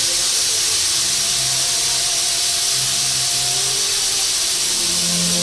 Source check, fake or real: real